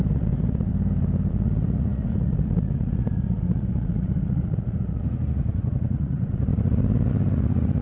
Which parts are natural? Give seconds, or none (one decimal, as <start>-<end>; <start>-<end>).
0.7-1.3